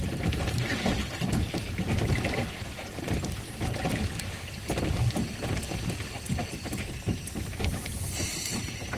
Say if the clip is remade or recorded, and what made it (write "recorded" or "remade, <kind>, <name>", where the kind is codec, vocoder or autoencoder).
remade, vocoder, BigVGAN v2